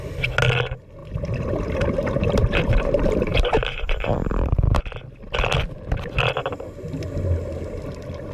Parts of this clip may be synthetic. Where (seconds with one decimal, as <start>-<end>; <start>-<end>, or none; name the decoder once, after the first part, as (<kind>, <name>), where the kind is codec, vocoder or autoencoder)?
1.0-4.8 (vocoder, BigVGAN v2)